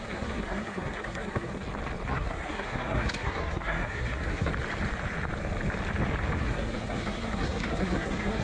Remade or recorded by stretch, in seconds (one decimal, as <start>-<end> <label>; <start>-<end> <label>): 0.0-1.5 remade; 1.5-2.1 recorded; 2.1-4.5 remade; 4.5-6.4 recorded; 6.4-8.4 remade